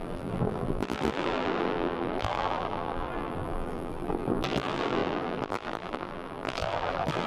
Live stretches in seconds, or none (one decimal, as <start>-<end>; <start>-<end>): none

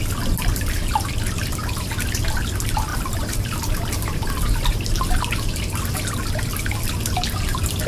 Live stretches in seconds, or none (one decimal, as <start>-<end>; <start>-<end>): 0.0-2.9; 5.1-7.9

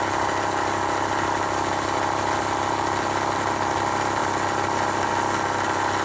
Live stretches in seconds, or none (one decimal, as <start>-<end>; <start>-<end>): 0.0-6.0

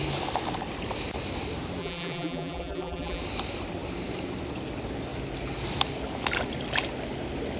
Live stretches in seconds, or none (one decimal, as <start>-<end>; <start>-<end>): 0.0-1.8; 3.2-7.6